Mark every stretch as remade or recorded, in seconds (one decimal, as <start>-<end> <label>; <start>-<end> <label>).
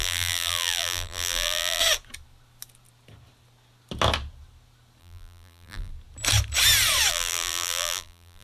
0.0-1.8 remade; 1.8-5.0 recorded; 5.0-5.9 remade; 5.9-7.1 recorded; 7.1-8.4 remade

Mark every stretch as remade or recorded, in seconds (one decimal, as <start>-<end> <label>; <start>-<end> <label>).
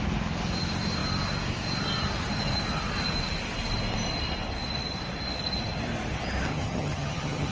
0.0-6.5 recorded; 6.5-7.5 remade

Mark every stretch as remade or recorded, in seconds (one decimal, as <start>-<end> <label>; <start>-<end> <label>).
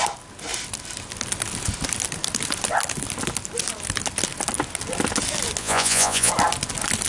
0.0-5.6 recorded; 5.6-6.3 remade; 6.3-7.1 recorded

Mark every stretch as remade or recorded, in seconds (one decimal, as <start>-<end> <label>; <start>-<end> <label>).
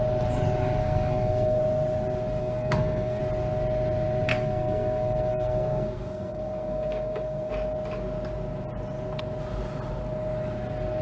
0.0-0.8 recorded; 0.8-1.6 remade; 1.6-2.4 recorded; 2.4-3.2 remade; 3.2-4.3 recorded; 4.3-7.5 remade; 7.5-11.0 recorded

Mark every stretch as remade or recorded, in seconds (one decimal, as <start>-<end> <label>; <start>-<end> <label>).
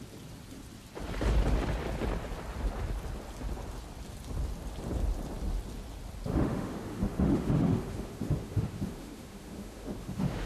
0.0-6.3 recorded; 6.3-10.5 remade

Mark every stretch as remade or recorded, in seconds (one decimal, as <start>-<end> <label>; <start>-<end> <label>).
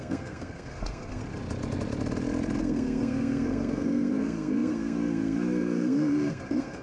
0.0-1.2 remade; 1.2-2.6 recorded; 2.6-6.8 remade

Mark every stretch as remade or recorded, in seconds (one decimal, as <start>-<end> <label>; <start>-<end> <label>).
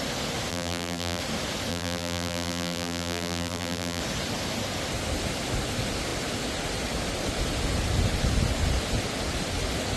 0.0-0.5 recorded; 0.5-1.2 remade; 1.2-1.7 recorded; 1.7-4.0 remade; 4.0-10.0 recorded